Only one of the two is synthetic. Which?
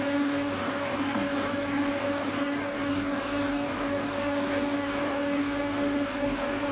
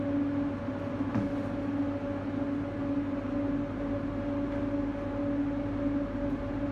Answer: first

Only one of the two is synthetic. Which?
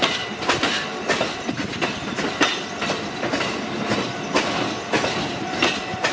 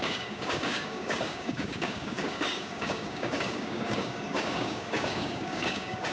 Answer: second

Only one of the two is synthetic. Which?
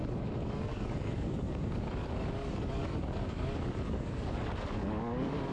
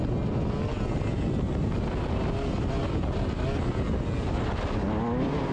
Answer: first